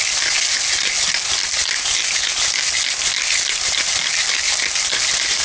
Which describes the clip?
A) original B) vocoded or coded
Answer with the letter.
A